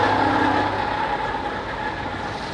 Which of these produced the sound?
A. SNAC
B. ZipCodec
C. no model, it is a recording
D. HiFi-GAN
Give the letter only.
C